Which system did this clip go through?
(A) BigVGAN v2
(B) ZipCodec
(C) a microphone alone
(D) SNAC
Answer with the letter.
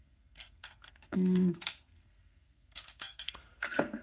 D